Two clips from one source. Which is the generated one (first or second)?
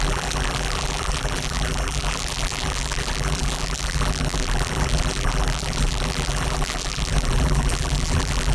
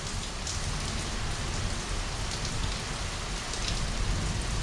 first